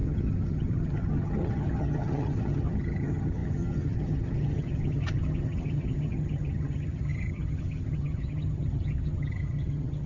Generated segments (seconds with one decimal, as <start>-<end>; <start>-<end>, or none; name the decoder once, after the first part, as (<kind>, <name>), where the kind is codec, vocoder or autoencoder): 0.0-10.1 (vocoder, HiFi-GAN)